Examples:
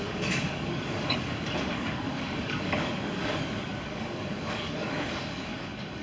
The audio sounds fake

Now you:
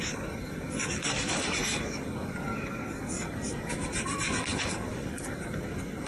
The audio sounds fake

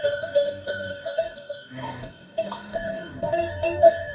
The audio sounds fake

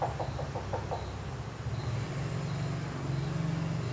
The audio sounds real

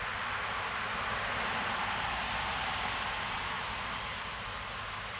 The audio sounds real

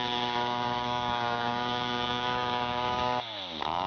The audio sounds fake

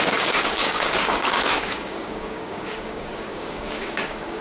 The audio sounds fake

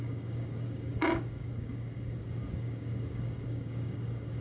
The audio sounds fake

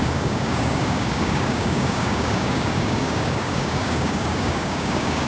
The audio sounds fake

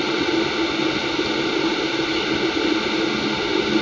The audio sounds real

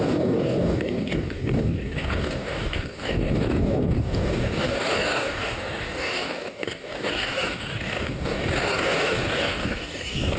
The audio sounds fake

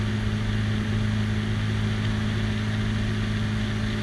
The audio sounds real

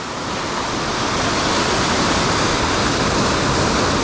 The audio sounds real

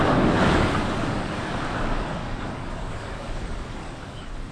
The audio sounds fake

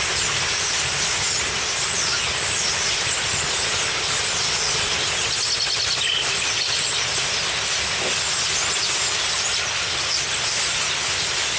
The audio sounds real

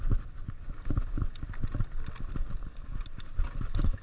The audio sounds real